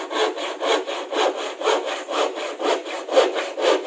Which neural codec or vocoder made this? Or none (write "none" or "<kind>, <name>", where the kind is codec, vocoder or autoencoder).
none